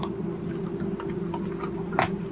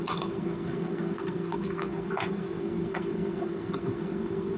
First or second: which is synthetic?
second